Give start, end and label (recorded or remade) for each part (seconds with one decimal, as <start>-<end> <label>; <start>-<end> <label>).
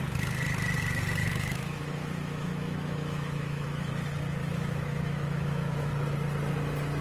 0.0-1.2 recorded; 1.2-3.9 remade; 3.9-4.4 recorded; 4.4-5.9 remade; 5.9-7.0 recorded